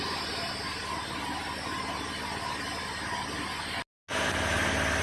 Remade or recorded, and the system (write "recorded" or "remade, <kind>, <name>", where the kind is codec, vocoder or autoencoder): recorded